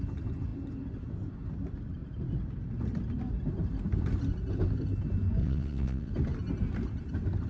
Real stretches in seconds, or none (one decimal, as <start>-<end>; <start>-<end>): 0.0-5.4; 6.1-7.5